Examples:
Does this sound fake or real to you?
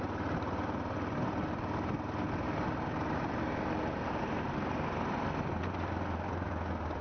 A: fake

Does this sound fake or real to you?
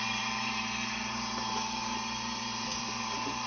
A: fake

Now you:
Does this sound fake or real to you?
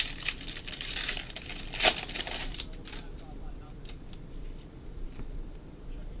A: fake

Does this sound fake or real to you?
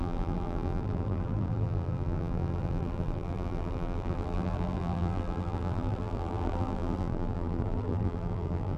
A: fake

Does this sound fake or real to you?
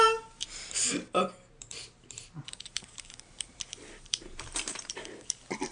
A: fake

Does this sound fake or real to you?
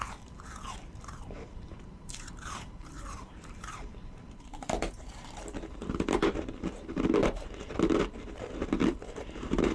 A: fake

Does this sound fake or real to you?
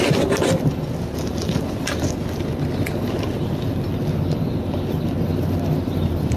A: real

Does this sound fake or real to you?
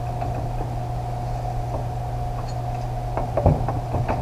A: real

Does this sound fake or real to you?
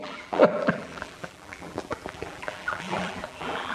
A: fake